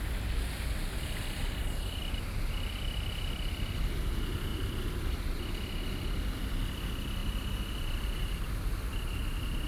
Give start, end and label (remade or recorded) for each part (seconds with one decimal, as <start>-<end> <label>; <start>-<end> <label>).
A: 0.0-9.7 recorded

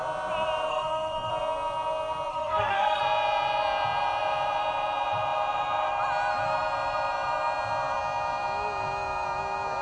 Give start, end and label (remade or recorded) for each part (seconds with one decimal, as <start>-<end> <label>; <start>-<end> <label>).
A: 0.0-0.7 recorded; 0.7-1.3 remade; 1.3-2.3 recorded; 2.3-3.0 remade; 3.0-9.8 recorded